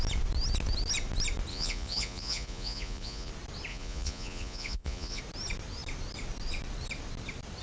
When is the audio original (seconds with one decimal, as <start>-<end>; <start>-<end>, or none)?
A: 0.0-1.5; 3.3-3.7; 5.2-7.6